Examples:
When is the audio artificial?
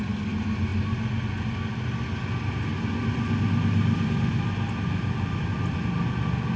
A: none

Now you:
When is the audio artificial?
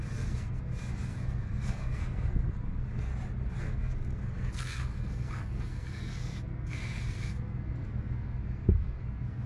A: 0.0-3.1 (codec, SNAC); 3.6-9.5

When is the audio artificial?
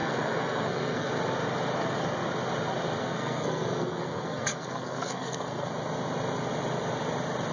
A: 0.0-1.1 (codec, SNAC); 3.0-5.7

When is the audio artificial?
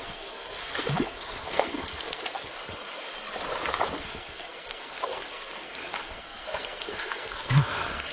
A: 0.0-2.6 (codec, SNAC); 4.0-8.1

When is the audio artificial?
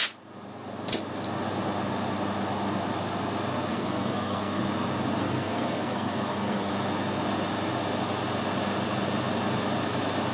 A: 3.7-4.6 (codec, SNAC); 5.2-6.7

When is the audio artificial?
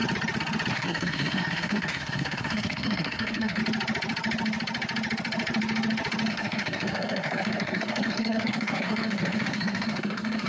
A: 0.7-3.6 (codec, SNAC); 6.3-10.5